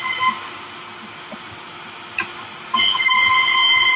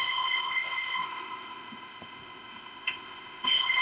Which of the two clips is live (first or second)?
first